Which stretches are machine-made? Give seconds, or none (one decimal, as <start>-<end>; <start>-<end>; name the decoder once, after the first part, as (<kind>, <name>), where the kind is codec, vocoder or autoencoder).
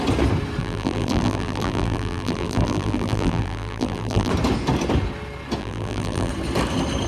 0.6-4.3 (vocoder, BigVGAN v2); 5.6-6.3